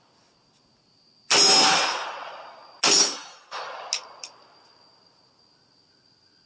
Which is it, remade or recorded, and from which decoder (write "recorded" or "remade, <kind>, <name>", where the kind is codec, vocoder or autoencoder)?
recorded